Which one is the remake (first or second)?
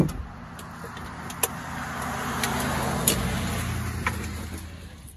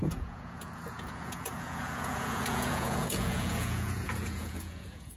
second